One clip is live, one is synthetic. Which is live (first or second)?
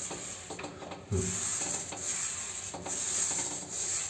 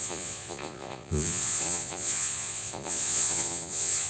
first